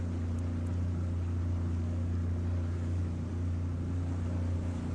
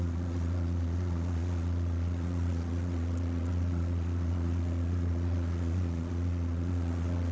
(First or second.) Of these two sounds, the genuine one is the first